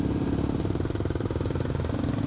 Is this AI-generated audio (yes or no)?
no